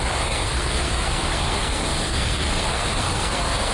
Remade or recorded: remade